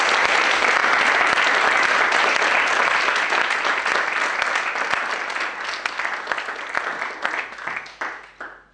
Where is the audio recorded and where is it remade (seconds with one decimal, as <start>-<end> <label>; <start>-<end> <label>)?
0.0-8.7 recorded